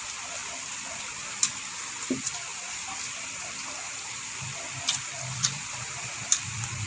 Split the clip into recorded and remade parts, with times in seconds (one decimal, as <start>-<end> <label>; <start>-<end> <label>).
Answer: 0.0-0.4 recorded; 0.4-1.0 remade; 1.0-2.5 recorded; 2.5-6.9 remade